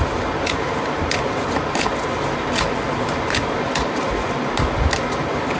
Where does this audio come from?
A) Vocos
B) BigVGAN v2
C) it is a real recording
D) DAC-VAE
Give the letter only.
C